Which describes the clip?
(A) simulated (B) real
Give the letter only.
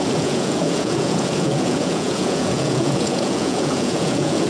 A